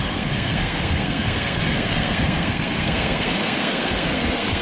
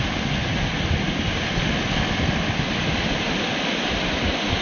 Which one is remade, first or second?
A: first